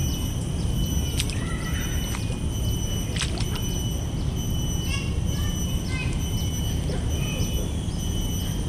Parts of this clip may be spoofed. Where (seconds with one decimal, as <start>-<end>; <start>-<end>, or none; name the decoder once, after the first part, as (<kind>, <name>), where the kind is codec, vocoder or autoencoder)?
none